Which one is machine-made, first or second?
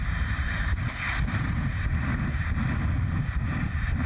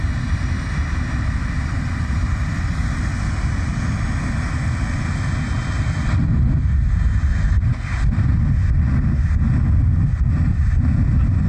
first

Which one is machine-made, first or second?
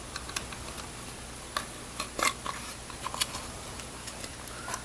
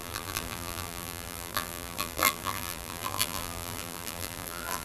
second